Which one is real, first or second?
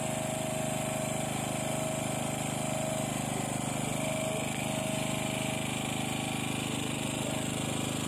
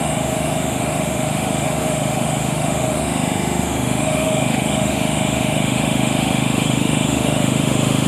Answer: first